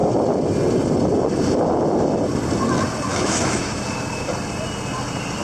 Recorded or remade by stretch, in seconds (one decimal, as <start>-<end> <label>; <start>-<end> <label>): 0.0-3.1 recorded; 3.1-3.8 remade; 3.8-5.4 recorded